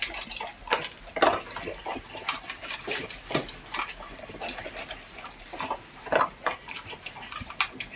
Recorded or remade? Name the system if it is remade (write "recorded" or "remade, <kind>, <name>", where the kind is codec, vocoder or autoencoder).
recorded